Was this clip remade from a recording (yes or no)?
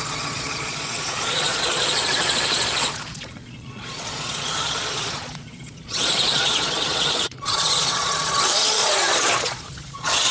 yes